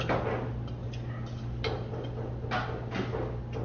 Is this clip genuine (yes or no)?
yes